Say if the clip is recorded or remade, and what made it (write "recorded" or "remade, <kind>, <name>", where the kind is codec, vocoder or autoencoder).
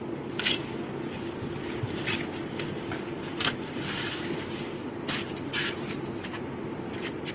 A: recorded